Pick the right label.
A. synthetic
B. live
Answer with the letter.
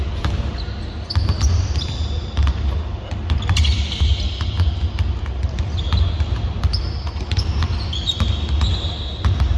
B